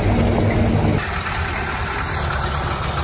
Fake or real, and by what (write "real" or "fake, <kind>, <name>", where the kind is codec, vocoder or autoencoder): real